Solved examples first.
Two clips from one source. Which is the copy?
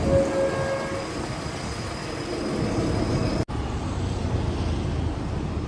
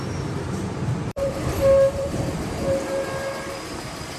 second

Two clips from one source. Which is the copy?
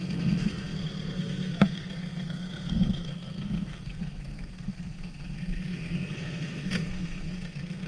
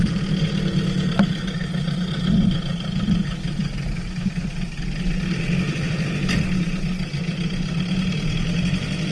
first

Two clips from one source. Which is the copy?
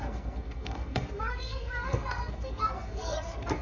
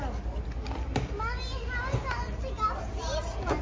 first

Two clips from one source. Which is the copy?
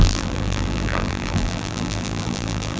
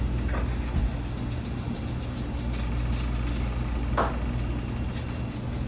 first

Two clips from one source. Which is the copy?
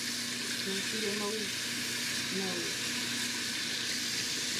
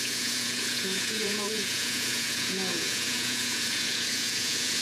second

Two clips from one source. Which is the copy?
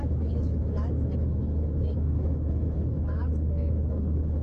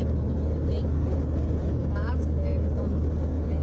first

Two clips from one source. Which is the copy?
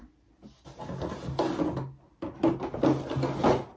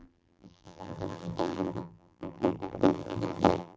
second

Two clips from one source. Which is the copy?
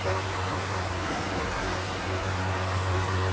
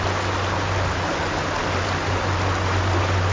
first